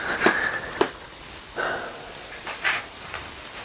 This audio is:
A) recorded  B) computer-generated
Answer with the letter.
A